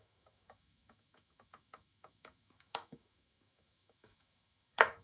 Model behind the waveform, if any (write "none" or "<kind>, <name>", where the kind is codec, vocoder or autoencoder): autoencoder, DAC-VAE